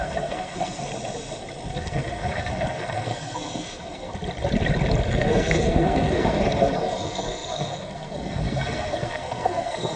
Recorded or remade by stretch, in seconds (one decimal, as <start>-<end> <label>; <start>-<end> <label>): 0.0-0.9 remade; 0.9-1.7 recorded; 1.7-4.1 remade; 4.1-5.1 recorded; 5.1-10.0 remade

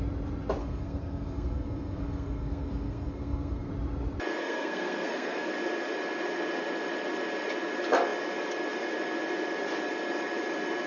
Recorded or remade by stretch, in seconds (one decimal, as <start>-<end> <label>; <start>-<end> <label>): 0.0-0.6 recorded; 0.6-3.7 remade; 3.7-4.4 recorded; 4.4-5.5 remade; 5.5-10.9 recorded

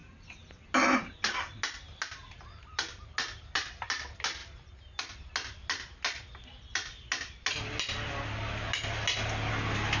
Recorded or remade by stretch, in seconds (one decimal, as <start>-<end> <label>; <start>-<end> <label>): 0.0-10.0 recorded

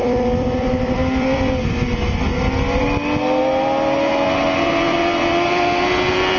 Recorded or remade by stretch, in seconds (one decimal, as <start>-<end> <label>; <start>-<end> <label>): 0.0-1.5 remade; 1.5-6.4 recorded

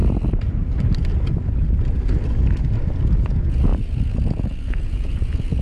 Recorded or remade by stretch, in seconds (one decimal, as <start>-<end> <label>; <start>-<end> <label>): 0.0-3.3 recorded; 3.3-5.6 remade

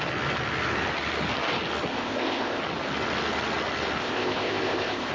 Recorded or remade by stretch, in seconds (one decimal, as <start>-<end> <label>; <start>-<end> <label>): 0.0-1.9 recorded; 1.9-2.6 remade; 2.6-4.0 recorded; 4.0-5.1 remade